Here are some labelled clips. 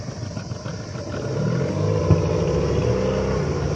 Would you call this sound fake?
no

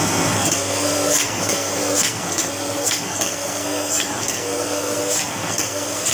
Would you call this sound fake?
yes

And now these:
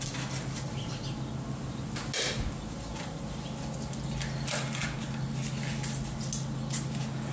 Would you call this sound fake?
no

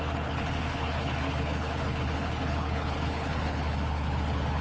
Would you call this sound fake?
yes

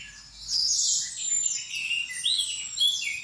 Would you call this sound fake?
no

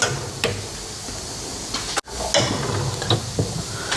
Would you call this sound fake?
no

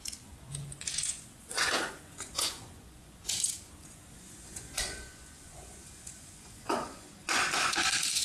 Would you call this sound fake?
yes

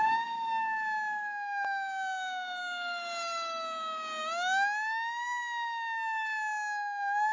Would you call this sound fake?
yes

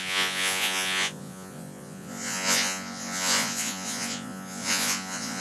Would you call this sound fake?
yes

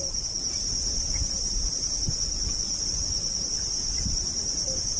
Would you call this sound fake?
no